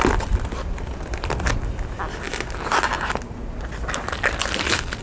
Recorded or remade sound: recorded